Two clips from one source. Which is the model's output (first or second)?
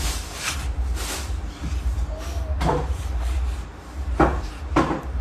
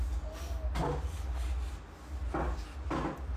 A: first